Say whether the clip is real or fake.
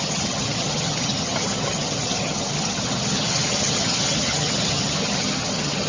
fake